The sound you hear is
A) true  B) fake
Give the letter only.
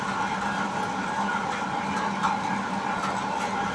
A